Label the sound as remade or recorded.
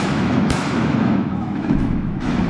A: remade